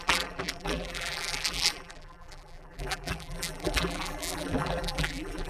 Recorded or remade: remade